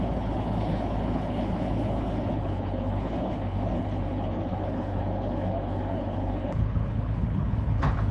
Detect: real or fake fake